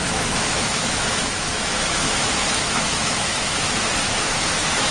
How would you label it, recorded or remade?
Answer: remade